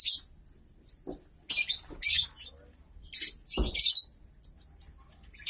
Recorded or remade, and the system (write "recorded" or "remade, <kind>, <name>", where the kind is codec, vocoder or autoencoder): recorded